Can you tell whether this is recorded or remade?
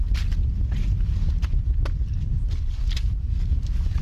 recorded